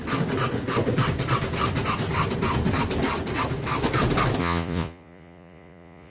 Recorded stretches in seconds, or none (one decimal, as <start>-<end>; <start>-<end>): 0.0-4.4

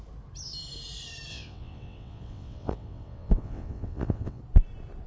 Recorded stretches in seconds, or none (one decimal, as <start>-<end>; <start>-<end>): 0.0-1.3; 4.4-5.1

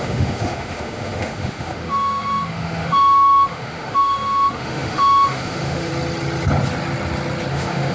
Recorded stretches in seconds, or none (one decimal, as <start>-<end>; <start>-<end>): 5.9-7.5

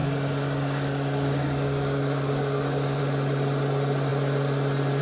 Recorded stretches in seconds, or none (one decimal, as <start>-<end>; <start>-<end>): 3.0-5.0